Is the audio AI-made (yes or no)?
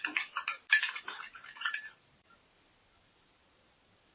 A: no